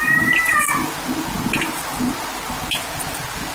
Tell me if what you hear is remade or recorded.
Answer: recorded